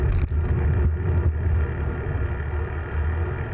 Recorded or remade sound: recorded